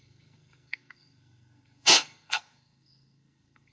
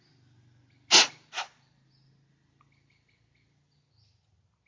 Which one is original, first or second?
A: second